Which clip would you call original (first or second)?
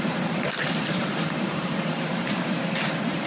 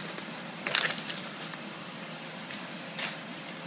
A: second